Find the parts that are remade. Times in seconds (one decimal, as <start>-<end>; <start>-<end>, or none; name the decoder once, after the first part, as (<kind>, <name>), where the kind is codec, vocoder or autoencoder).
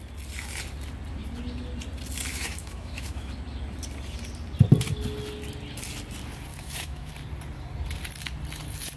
2.3-3.3 (autoencoder, DAC-VAE); 6.5-7.1